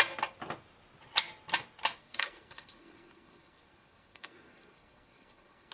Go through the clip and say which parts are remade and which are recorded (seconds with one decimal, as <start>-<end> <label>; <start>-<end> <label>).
0.0-2.0 recorded; 2.0-5.7 remade